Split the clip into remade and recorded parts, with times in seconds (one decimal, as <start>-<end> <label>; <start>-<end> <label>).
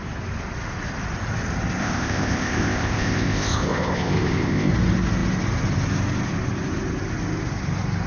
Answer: 0.0-1.8 recorded; 1.8-4.7 remade; 4.7-8.1 recorded